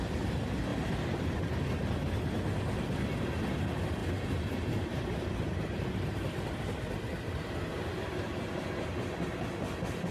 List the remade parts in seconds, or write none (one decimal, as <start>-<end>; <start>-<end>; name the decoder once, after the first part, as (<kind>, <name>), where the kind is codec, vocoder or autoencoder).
0.7-1.6 (vocoder, BigVGAN v2); 4.0-8.3